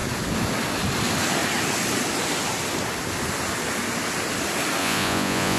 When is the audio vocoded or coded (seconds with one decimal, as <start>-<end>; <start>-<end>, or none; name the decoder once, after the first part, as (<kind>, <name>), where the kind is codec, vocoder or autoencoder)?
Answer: 4.8-5.6 (vocoder, Vocos)